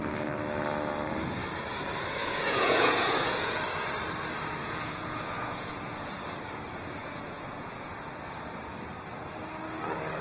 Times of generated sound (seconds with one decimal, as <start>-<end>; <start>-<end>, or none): 2.2-3.6; 4.6-6.1; 7.0-7.9